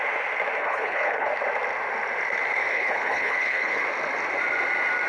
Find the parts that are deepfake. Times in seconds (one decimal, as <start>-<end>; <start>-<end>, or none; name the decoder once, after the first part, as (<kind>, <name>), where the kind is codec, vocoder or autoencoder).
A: 0.6-1.3 (codec, HILCodec); 2.7-3.8